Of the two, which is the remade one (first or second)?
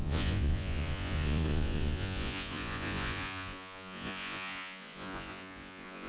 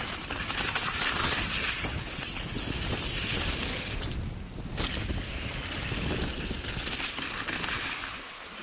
first